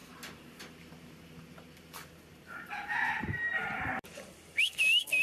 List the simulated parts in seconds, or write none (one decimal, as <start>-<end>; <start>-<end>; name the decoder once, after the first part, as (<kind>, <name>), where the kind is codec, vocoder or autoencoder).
0.0-0.6 (vocoder, BigVGAN v2); 2.3-4.8